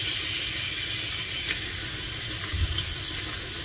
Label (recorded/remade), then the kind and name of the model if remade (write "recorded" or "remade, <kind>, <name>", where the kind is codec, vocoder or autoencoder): recorded